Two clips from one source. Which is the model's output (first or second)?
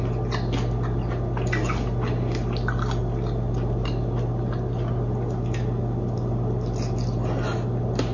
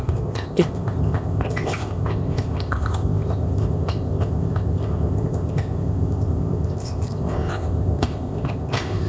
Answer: second